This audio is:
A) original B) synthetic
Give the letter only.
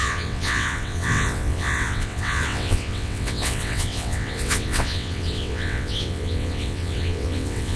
B